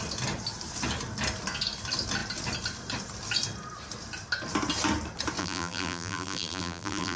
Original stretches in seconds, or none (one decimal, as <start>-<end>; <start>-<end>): 0.0-5.4